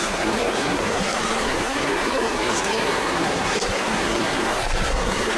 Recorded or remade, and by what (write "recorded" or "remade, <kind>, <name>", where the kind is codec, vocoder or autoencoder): remade, codec, SNAC